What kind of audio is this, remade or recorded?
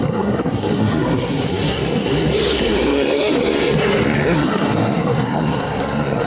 remade